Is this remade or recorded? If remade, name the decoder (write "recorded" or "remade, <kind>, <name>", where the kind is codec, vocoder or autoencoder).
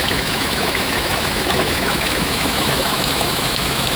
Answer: remade, autoencoder, DAC-VAE